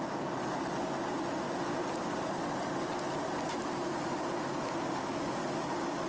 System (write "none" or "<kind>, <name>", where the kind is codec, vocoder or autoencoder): none